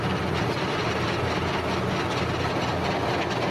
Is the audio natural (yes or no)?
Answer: yes